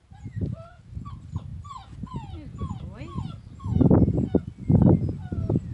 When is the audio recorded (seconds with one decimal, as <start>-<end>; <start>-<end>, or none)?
0.0-5.7